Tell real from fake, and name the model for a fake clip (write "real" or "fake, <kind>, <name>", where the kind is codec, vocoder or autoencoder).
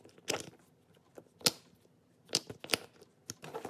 real